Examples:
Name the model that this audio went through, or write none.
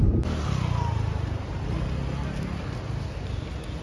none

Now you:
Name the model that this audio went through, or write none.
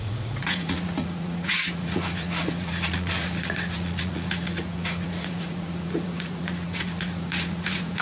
vocoder, Vocos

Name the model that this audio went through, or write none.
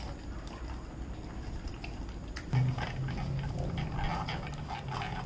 none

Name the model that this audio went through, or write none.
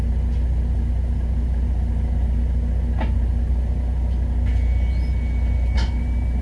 none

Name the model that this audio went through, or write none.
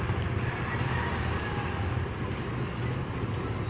none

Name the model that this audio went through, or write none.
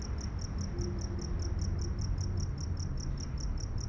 none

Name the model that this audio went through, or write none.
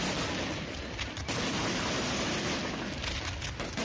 none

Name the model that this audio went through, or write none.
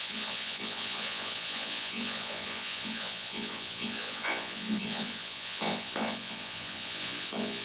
vocoder, Vocos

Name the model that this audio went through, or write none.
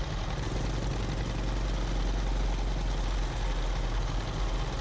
none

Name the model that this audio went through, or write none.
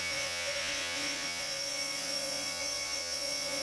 vocoder, Vocos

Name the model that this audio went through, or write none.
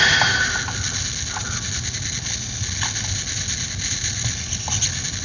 none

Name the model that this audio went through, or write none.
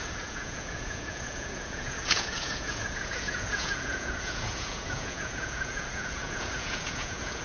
vocoder, Vocos